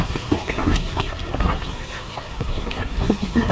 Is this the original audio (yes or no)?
no